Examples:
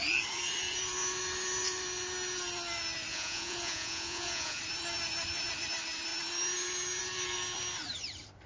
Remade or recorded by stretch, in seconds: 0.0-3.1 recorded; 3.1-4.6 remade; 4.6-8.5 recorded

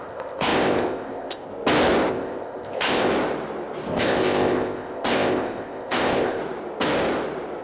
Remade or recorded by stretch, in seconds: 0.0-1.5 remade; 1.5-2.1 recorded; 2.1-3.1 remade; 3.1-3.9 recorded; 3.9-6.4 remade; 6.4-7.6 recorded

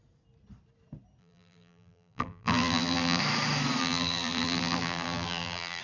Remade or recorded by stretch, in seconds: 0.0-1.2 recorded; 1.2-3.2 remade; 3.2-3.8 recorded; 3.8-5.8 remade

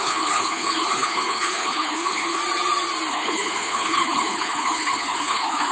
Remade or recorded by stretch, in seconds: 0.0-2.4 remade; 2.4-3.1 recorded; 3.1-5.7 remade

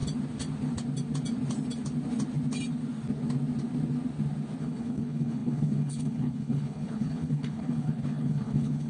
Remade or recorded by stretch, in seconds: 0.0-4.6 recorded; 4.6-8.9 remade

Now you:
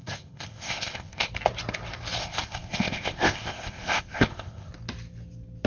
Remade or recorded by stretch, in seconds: 0.0-1.3 remade; 1.3-2.2 recorded; 2.2-4.7 remade; 4.7-5.7 recorded